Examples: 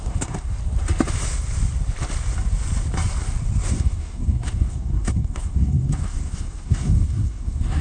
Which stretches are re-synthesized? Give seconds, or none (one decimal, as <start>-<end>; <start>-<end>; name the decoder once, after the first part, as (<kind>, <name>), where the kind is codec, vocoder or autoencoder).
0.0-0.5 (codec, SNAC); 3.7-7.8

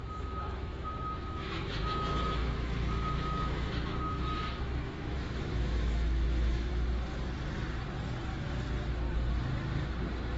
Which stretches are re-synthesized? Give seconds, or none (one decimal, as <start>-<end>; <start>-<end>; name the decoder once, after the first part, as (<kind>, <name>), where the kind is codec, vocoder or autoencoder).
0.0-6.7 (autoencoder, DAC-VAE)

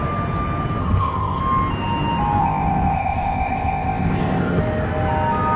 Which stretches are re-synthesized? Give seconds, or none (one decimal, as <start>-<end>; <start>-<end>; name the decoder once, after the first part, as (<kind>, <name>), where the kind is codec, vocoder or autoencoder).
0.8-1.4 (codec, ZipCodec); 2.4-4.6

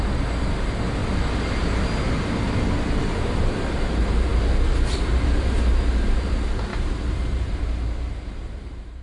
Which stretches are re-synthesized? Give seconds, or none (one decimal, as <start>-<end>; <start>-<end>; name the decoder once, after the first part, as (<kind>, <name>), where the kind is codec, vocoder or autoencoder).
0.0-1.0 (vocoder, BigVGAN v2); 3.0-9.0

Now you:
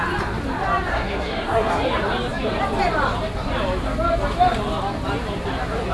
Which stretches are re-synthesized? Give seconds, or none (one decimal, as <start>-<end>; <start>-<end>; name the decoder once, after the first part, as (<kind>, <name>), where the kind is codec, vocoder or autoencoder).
0.9-1.7 (codec, SNAC)

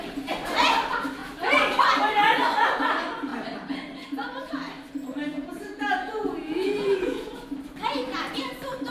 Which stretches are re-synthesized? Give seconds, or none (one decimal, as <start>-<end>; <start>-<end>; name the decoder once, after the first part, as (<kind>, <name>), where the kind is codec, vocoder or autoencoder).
5.3-7.4 (vocoder, Vocos)

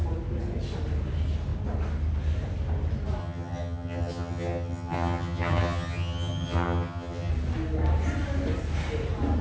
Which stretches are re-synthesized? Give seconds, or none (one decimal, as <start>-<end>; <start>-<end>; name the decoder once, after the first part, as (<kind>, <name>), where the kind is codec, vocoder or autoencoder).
3.2-7.3 (vocoder, HiFi-GAN)

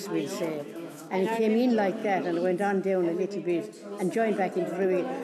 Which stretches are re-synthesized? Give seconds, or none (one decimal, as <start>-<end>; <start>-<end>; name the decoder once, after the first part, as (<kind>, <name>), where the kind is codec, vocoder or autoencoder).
0.6-1.4 (autoencoder, DAC-VAE)